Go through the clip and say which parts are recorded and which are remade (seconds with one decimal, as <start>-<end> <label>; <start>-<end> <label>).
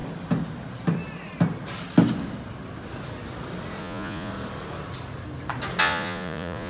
0.0-3.8 recorded; 3.8-4.3 remade; 4.3-5.8 recorded; 5.8-6.7 remade